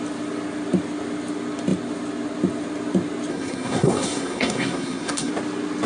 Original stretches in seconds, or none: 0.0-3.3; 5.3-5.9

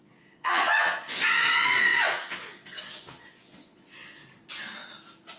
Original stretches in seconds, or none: 4.2-5.4

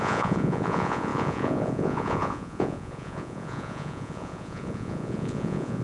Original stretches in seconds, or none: none

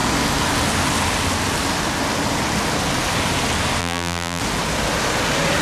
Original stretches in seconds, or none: 0.0-3.8; 4.4-5.6